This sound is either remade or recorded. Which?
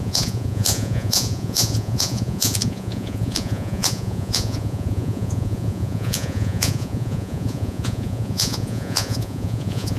remade